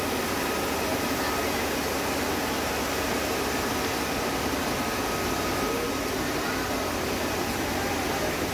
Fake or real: real